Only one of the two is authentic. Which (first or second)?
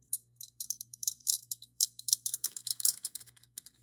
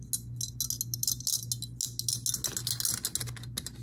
second